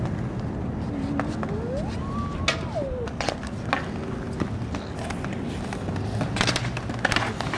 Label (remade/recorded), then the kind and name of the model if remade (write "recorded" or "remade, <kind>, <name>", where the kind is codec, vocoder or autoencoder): recorded